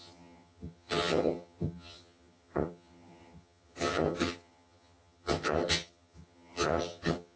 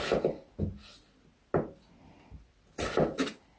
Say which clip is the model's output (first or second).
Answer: first